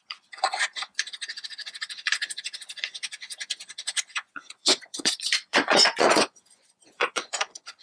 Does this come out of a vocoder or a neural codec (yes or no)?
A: yes